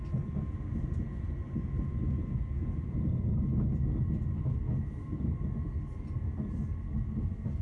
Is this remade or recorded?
recorded